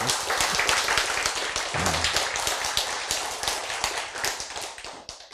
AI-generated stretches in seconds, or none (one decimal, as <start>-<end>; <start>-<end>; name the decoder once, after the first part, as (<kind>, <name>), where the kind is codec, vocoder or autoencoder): none